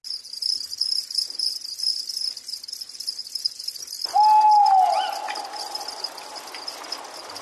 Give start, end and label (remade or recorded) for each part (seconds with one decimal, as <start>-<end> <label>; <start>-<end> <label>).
0.0-7.4 recorded